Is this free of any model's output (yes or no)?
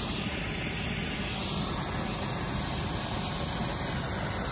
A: yes